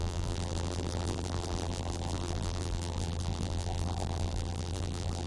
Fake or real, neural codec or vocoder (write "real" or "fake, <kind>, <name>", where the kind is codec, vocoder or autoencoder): fake, vocoder, BigVGAN v2